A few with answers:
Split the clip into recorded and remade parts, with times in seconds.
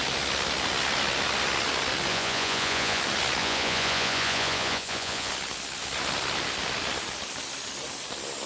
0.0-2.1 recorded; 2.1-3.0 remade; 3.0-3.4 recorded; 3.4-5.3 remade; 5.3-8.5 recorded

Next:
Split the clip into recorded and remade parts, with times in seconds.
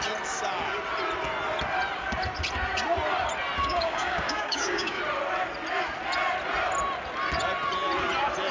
0.0-3.6 recorded; 3.6-5.0 remade; 5.0-8.5 recorded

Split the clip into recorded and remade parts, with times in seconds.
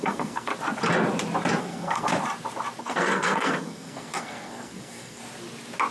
0.0-0.5 remade; 0.5-1.6 recorded; 1.6-2.1 remade; 2.1-2.8 recorded; 2.8-5.2 remade; 5.2-5.9 recorded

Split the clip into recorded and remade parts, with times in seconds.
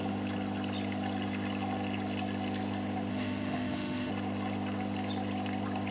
0.0-3.1 recorded; 3.1-4.1 remade; 4.1-5.9 recorded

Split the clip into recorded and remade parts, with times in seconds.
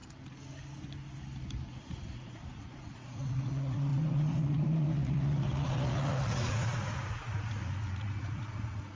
0.0-1.8 recorded; 1.8-9.0 remade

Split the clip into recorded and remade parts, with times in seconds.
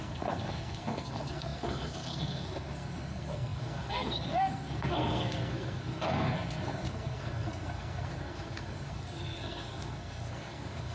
0.0-10.9 remade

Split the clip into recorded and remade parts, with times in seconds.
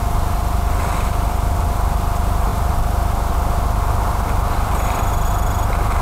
0.0-6.0 recorded